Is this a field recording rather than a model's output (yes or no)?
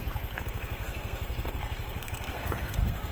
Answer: no